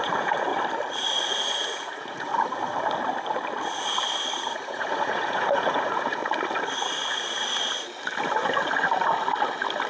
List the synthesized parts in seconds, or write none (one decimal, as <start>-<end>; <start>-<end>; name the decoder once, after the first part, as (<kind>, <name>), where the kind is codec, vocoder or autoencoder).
0.0-0.5 (vocoder, Vocos); 1.1-2.3; 4.4-6.2